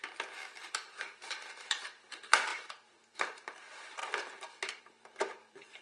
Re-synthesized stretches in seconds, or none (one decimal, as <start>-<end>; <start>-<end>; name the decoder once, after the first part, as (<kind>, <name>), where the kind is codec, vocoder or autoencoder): 0.6-4.0 (vocoder, BigVGAN v2); 4.8-5.8